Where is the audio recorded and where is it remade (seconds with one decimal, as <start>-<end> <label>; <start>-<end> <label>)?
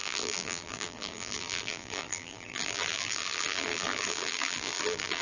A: 0.0-5.2 remade